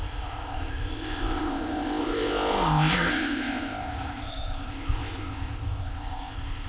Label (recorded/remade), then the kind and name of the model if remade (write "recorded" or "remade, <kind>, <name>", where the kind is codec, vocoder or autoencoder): remade, codec, ZipCodec